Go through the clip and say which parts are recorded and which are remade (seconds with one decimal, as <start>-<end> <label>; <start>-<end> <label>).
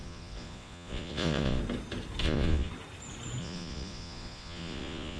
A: 0.0-1.6 remade; 1.6-2.2 recorded; 2.2-2.7 remade; 2.7-3.4 recorded; 3.4-5.2 remade